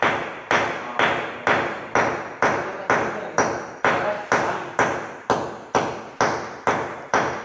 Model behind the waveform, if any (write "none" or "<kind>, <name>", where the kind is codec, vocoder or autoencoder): none